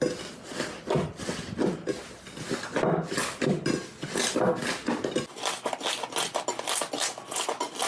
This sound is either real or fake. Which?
real